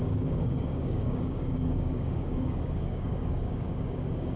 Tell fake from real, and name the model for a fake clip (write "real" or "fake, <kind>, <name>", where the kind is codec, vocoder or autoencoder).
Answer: fake, codec, DAC